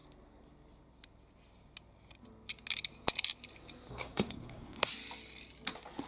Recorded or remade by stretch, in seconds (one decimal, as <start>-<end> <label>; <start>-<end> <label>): 0.0-3.9 recorded; 3.9-4.9 remade; 4.9-6.1 recorded